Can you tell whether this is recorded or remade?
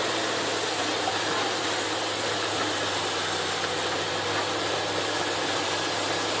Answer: recorded